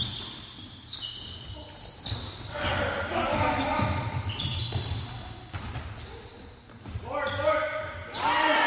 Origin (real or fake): real